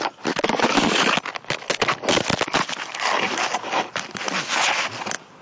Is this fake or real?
real